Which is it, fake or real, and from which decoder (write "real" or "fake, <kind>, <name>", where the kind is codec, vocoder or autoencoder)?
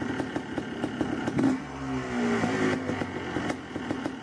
real